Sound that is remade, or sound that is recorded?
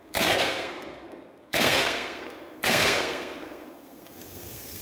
remade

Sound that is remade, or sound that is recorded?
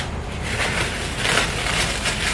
recorded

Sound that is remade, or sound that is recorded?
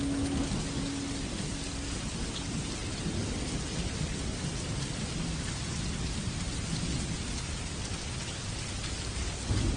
recorded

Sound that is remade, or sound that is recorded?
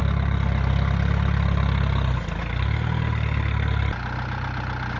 recorded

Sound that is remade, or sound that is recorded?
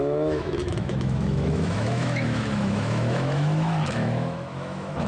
remade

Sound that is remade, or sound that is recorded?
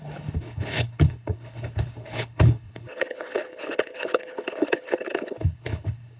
remade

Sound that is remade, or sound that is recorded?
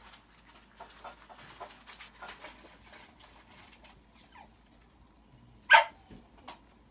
recorded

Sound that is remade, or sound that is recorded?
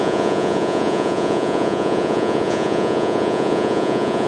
remade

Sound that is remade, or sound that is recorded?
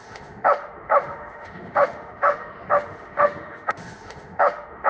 remade